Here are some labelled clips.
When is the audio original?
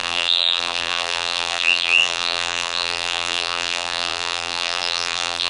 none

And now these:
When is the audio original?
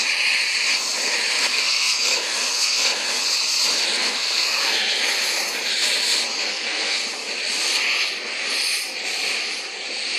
0.0-1.5; 3.2-4.0; 5.1-6.5; 7.0-10.2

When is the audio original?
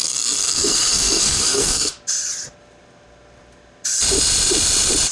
1.9-5.1